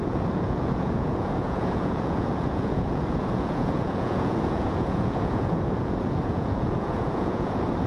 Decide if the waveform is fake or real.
fake